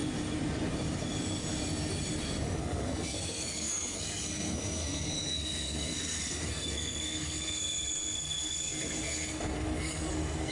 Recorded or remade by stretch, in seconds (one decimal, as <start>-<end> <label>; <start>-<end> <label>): 0.0-2.6 recorded; 2.6-10.5 remade